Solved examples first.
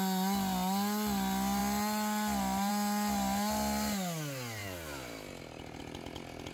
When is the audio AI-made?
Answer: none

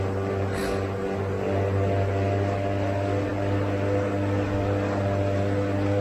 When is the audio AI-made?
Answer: none

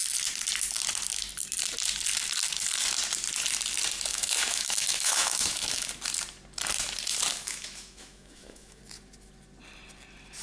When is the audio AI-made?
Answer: 4.1-5.9 (autoencoder, DAC-VAE); 7.3-8.8

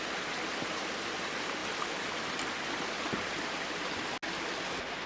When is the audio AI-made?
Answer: none

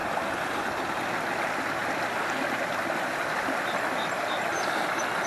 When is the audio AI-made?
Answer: none